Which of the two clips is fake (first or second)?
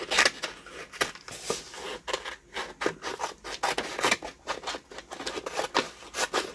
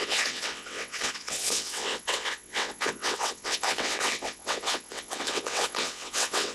second